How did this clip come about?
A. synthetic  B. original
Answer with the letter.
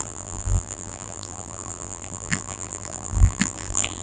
A